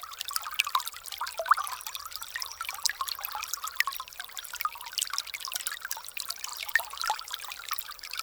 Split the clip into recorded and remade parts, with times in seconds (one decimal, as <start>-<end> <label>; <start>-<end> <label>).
0.0-6.5 recorded; 6.5-8.2 remade